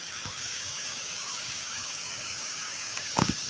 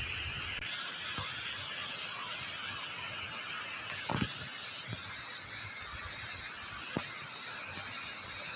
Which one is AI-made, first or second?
first